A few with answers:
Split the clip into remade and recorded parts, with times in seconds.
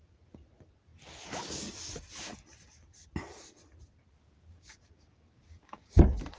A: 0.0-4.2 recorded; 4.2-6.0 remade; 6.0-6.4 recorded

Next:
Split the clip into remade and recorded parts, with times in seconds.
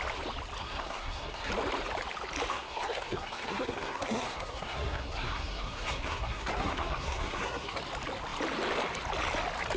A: 0.0-0.6 recorded; 0.6-1.5 remade; 1.5-2.5 recorded; 2.5-7.8 remade; 7.8-9.8 recorded